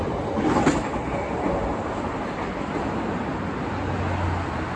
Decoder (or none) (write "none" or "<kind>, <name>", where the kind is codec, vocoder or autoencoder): none